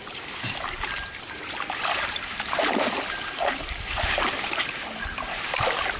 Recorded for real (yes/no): no